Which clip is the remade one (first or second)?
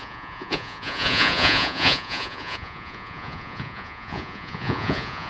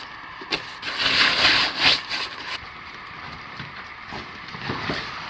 first